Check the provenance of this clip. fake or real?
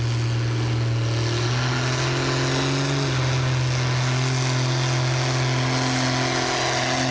real